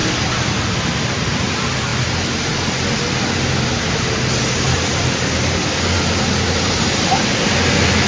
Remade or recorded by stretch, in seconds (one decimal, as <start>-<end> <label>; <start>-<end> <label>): 0.0-1.4 remade; 1.4-8.1 recorded